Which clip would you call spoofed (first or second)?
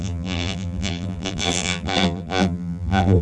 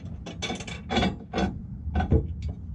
first